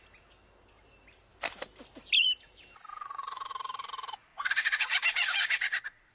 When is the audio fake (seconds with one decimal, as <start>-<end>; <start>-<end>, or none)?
2.9-3.5; 4.3-6.1